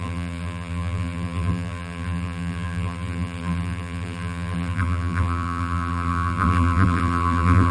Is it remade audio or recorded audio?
remade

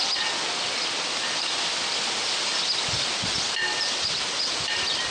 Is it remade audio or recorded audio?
remade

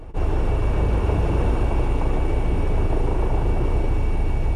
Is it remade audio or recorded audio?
recorded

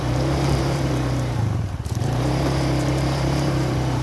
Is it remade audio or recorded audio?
remade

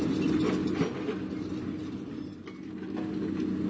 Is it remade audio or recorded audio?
recorded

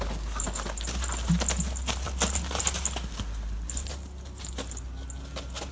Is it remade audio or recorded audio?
recorded